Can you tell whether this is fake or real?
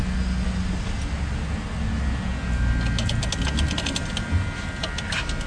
real